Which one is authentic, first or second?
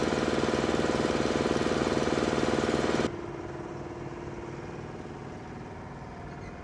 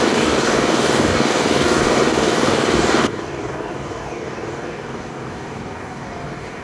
first